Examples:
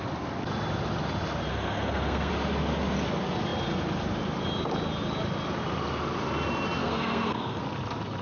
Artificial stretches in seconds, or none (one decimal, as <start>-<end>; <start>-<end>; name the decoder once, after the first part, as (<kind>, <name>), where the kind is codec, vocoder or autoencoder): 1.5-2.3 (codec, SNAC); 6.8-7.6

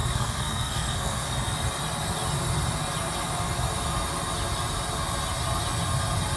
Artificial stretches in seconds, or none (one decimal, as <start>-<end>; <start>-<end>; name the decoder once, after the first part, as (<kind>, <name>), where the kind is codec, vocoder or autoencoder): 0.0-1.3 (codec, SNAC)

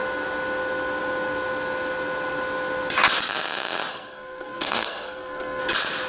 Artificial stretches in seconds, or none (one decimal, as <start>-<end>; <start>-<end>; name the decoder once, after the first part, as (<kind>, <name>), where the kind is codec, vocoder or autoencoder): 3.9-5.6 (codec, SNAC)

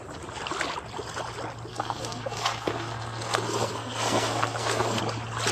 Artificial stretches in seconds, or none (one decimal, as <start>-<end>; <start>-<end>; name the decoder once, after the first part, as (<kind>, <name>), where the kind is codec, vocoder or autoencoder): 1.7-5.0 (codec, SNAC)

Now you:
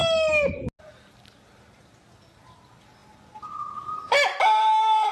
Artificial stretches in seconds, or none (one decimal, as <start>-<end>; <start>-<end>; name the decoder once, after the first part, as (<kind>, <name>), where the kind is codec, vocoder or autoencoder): none

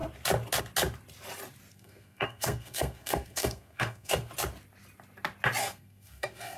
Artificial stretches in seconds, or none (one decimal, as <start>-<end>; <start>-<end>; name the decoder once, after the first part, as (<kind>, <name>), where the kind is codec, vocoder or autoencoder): 1.7-4.3 (codec, SNAC); 5.6-6.6

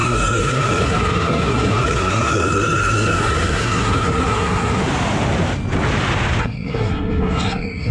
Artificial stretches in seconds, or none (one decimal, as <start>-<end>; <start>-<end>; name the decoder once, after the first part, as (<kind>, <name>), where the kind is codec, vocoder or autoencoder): 0.0-4.8 (codec, SNAC); 6.4-7.9